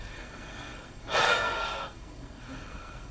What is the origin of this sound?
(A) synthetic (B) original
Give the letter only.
A